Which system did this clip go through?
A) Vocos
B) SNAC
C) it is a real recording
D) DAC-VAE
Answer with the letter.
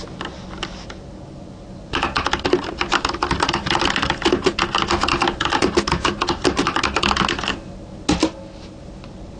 C